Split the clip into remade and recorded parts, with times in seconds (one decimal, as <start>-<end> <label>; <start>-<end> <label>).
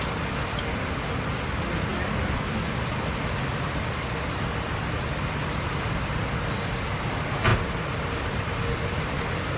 0.0-9.6 recorded